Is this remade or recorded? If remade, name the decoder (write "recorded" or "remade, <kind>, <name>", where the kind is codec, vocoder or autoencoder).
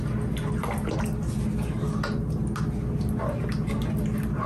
recorded